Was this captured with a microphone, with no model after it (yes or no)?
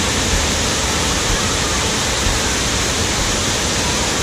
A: no